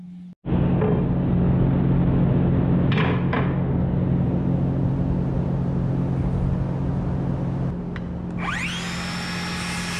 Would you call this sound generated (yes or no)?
no